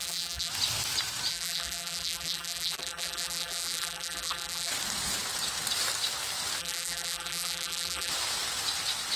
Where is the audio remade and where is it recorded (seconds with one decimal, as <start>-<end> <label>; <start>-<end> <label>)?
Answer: 0.0-0.5 remade; 0.5-1.3 recorded; 1.3-4.7 remade; 4.7-6.6 recorded; 6.6-8.1 remade; 8.1-9.2 recorded